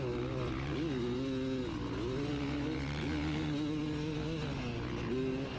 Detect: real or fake real